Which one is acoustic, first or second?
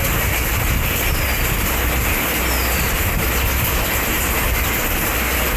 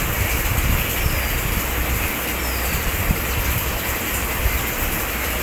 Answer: first